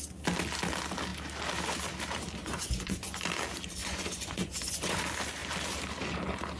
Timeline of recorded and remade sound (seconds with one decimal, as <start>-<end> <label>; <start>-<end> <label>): 0.0-2.4 recorded; 2.4-3.2 remade; 3.2-3.8 recorded; 3.8-5.0 remade; 5.0-6.6 recorded